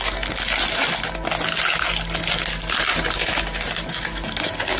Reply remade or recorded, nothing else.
recorded